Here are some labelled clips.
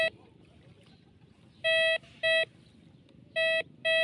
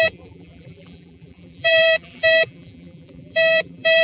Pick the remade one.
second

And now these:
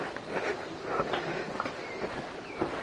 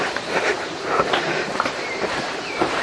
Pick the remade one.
second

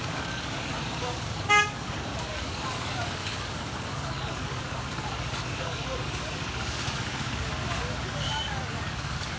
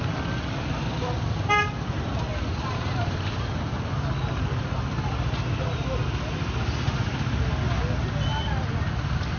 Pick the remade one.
first